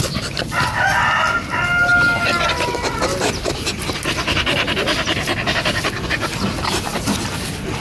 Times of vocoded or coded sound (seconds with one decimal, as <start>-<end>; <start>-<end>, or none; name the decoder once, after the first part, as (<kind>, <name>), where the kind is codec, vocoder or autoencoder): none